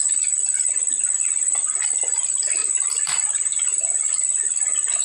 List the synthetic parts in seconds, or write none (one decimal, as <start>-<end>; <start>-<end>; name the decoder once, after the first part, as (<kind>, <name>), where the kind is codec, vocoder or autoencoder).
none